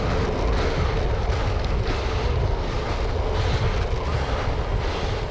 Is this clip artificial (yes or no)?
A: no